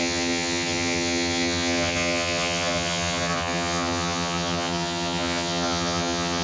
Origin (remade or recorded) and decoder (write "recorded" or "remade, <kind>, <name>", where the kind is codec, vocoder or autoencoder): remade, vocoder, HiFi-GAN